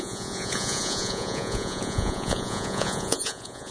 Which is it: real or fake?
fake